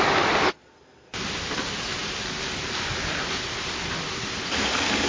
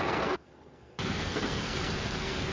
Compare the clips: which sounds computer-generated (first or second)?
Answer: second